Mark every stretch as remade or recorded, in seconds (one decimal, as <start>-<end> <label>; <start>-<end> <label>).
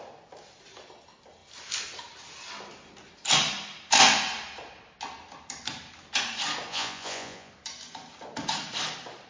0.0-6.7 recorded; 6.7-7.5 remade; 7.5-9.3 recorded